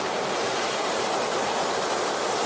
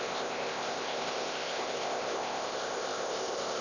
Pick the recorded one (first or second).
first